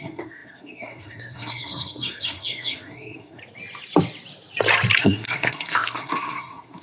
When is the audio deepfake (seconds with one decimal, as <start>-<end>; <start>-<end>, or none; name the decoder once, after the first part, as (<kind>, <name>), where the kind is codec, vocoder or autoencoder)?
0.0-3.4 (codec, SNAC); 5.0-6.8